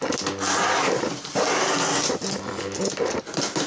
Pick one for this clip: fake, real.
real